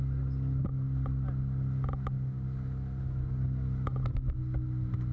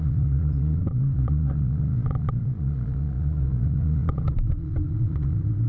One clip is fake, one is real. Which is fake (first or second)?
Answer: second